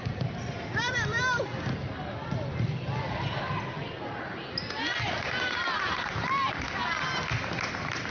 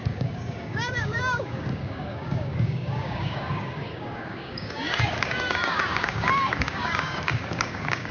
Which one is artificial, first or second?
second